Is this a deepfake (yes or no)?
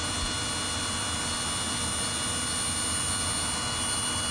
no